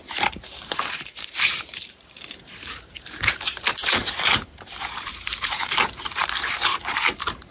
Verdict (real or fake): fake